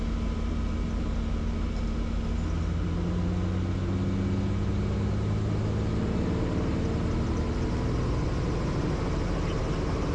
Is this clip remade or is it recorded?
recorded